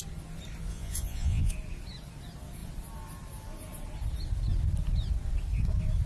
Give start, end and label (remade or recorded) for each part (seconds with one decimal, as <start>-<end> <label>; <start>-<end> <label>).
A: 0.0-0.7 recorded; 0.7-1.5 remade; 1.5-6.1 recorded